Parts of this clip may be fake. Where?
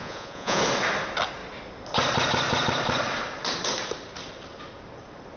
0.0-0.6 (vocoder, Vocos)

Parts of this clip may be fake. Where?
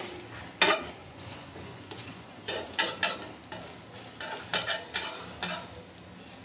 1.0-3.1 (vocoder, Vocos)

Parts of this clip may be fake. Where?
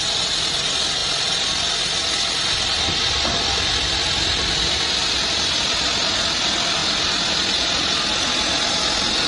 none